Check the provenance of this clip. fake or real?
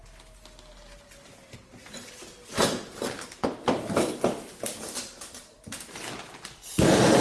real